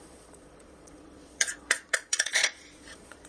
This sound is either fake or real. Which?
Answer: fake